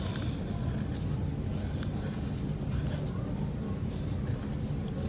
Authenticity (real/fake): real